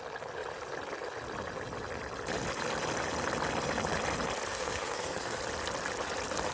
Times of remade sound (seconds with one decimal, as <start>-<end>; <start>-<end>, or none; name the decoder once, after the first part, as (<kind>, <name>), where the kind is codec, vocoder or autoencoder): 4.5-5.4 (codec, SNAC)